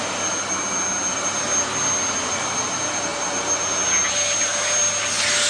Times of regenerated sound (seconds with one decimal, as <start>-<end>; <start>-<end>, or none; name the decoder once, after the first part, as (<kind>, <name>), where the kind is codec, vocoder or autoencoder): none